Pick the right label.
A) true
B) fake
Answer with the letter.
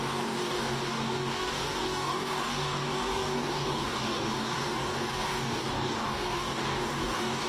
B